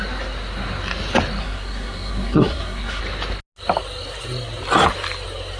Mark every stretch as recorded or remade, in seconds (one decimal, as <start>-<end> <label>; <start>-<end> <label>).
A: 0.0-1.4 recorded; 1.4-3.0 remade; 3.0-5.6 recorded